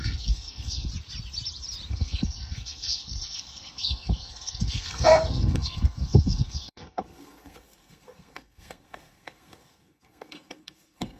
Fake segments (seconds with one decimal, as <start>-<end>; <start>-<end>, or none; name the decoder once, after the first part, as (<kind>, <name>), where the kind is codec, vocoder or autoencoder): 0.0-0.9 (codec, SNAC); 1.9-11.2